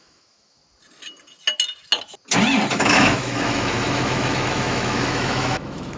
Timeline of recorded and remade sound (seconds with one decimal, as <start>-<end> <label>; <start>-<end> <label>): 0.0-0.6 remade; 0.6-2.7 recorded; 2.7-6.0 remade